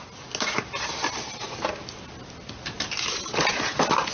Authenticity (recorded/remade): recorded